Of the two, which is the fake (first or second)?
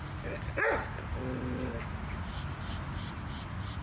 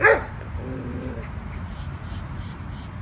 second